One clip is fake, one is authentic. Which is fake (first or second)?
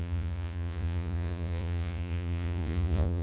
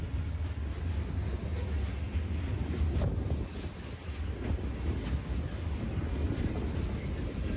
first